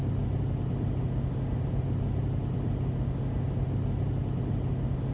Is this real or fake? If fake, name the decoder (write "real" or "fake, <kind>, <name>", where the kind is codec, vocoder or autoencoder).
real